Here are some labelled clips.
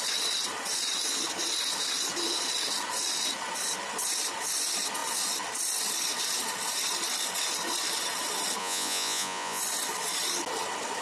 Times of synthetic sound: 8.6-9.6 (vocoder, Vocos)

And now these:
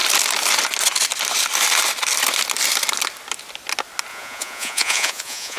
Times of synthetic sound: 4.1-5.6 (vocoder, Vocos)

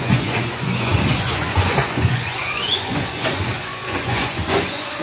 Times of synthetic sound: 0.0-5.0 (vocoder, Vocos)

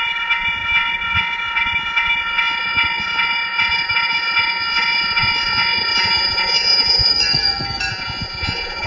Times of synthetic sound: 0.0-7.1 (vocoder, Vocos); 7.9-8.9

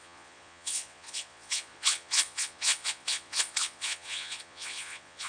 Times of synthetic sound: 0.0-5.3 (vocoder, Vocos)

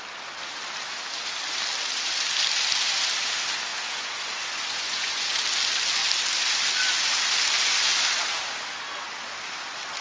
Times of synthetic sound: 3.7-5.4 (vocoder, Vocos)